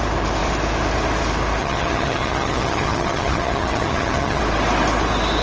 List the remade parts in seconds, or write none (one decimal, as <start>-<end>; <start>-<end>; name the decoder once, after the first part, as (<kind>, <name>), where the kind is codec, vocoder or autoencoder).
1.6-4.4 (vocoder, HiFi-GAN)